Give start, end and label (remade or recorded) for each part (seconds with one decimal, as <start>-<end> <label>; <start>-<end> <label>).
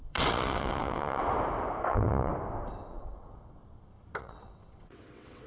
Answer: 0.0-1.2 remade; 1.2-1.9 recorded; 1.9-2.3 remade; 2.3-2.9 recorded; 2.9-3.6 remade; 3.6-4.2 recorded; 4.2-5.5 remade